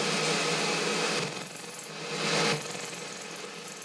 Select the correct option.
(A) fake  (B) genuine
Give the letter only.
B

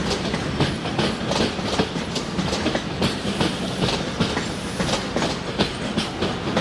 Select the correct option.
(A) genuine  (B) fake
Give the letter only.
A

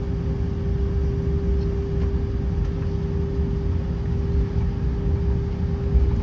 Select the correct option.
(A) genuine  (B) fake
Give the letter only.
A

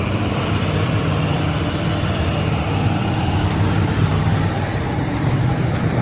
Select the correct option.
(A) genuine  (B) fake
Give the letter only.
B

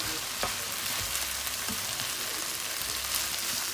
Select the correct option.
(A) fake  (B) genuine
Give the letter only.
B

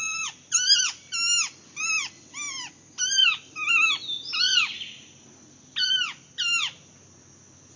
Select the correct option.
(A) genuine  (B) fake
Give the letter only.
A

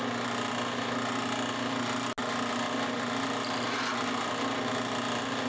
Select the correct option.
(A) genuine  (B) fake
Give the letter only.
A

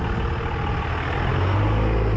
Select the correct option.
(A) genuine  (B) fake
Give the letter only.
A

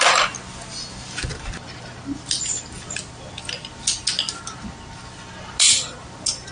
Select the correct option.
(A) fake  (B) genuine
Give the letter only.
B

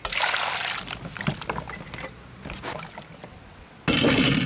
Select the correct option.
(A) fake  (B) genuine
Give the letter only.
B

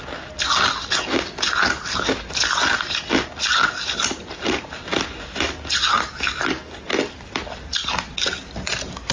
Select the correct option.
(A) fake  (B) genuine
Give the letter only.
B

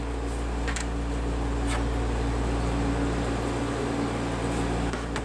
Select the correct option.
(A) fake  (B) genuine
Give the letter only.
B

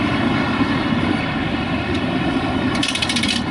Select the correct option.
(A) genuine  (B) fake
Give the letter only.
B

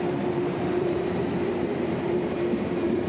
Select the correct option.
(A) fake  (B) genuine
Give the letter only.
A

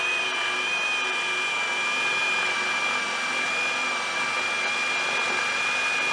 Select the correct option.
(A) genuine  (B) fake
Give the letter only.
A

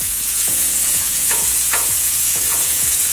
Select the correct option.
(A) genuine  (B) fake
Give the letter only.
B